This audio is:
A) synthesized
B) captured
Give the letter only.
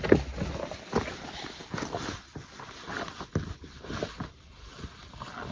B